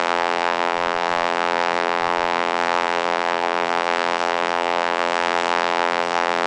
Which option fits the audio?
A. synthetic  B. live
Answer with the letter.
A